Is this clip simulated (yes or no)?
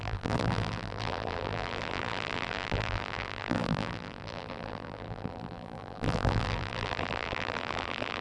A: yes